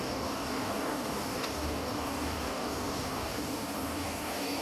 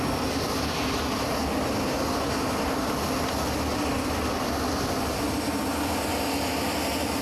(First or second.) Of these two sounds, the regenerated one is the first